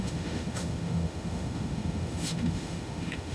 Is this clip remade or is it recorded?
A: remade